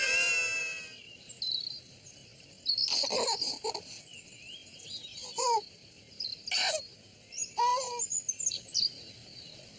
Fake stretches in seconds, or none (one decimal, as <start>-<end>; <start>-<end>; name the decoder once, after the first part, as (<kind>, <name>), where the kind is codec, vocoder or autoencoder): none